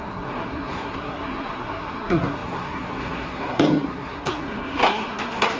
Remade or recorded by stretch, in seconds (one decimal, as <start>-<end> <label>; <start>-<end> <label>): 0.0-5.6 remade